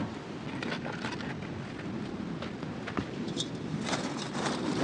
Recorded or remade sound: recorded